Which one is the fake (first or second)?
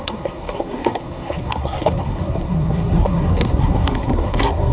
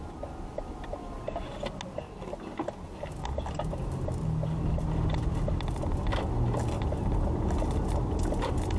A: first